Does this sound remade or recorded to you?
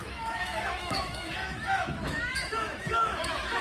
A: remade